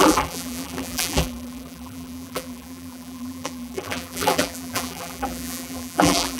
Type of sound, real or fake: fake